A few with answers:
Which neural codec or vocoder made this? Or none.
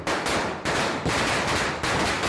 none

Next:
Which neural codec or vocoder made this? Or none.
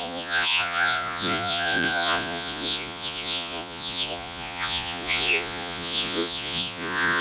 vocoder, Vocos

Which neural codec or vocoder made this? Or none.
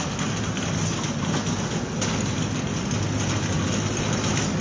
none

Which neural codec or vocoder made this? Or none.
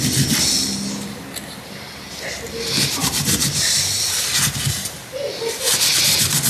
none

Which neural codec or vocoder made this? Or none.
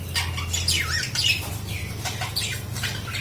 none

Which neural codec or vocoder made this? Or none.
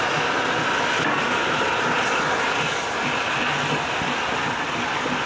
none